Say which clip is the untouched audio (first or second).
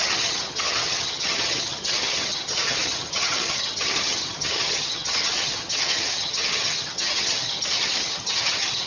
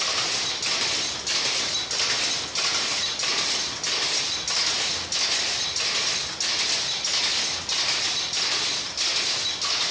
second